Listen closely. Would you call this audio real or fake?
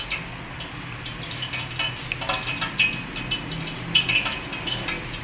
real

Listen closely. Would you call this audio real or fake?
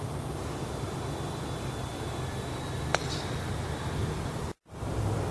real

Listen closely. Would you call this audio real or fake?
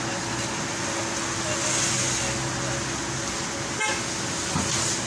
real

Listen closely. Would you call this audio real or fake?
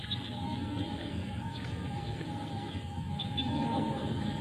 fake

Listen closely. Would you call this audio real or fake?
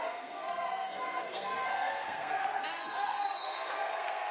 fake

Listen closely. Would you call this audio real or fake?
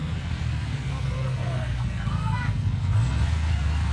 fake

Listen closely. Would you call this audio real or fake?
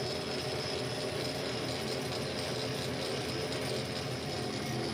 real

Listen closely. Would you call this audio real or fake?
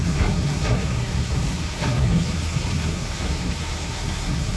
fake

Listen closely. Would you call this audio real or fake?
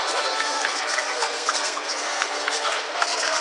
fake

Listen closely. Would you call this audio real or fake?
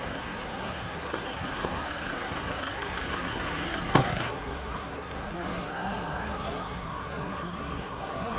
fake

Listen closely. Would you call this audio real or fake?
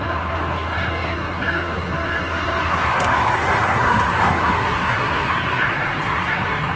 fake